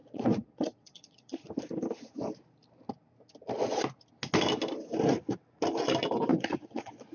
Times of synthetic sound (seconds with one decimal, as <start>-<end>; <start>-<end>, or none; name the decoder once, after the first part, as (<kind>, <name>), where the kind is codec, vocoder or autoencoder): 0.0-1.5 (vocoder, Vocos); 6.3-7.1